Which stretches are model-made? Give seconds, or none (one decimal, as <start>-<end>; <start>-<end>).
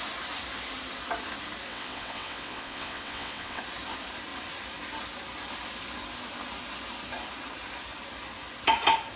1.7-3.6